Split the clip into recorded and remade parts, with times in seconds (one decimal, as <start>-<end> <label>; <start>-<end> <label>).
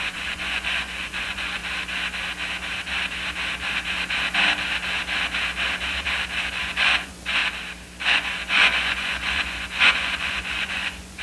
0.0-1.6 remade; 1.6-6.5 recorded; 6.5-7.4 remade; 7.4-8.0 recorded; 8.0-11.2 remade